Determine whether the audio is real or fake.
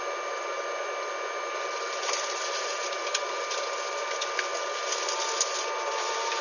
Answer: real